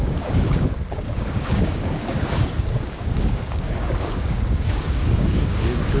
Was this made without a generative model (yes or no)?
no